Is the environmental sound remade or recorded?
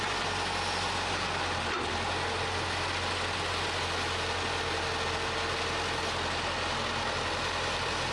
recorded